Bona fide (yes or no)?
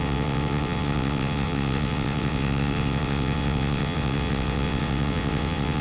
no